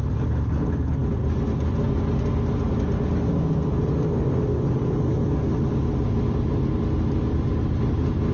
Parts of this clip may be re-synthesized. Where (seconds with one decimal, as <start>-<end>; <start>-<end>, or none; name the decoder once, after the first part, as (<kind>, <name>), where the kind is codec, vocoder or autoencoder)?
none